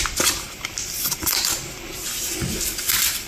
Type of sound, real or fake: real